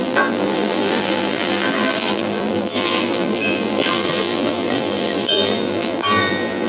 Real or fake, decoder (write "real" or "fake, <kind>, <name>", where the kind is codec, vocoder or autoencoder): fake, vocoder, BigVGAN v2